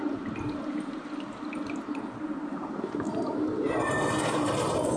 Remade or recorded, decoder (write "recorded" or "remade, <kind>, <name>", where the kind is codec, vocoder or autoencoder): remade, vocoder, BigVGAN v2